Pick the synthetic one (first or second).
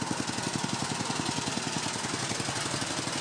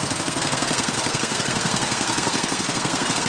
second